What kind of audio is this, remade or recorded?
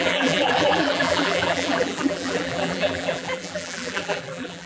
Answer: remade